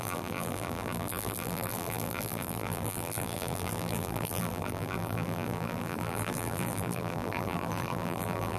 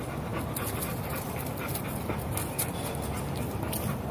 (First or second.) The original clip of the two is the second